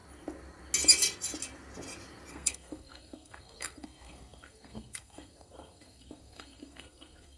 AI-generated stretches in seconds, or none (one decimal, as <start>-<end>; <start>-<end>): 2.3-7.4